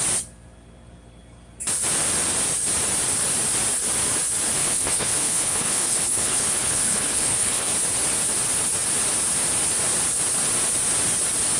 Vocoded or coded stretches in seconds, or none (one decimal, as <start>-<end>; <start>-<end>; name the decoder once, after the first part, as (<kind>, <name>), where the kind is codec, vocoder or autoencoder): 4.6-7.7 (codec, HILCodec)